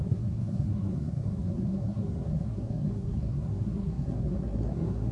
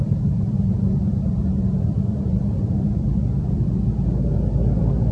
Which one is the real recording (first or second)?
second